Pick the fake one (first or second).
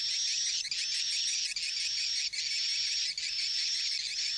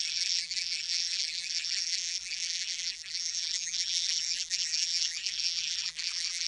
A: second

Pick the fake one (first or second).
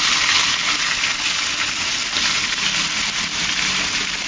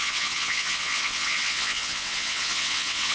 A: second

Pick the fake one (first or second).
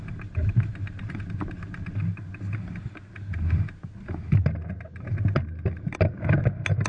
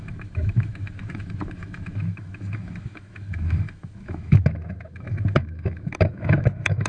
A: second